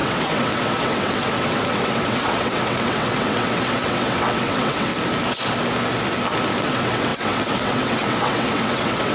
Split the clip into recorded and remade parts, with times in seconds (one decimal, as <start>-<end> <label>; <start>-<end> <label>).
0.0-4.9 remade; 4.9-6.6 recorded; 6.6-9.1 remade